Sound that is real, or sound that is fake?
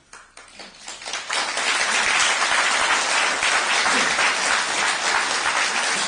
real